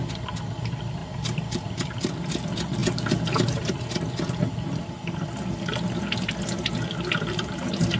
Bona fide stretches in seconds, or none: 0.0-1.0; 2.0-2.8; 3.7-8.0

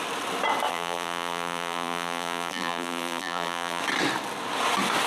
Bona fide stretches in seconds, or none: 0.0-0.7; 3.8-5.1

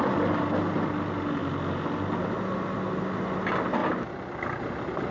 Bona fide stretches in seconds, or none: 0.0-5.1

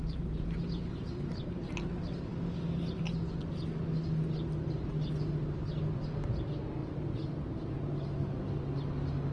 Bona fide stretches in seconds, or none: 0.8-6.8; 7.8-9.3